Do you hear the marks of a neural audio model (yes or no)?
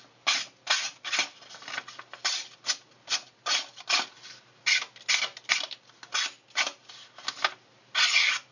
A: no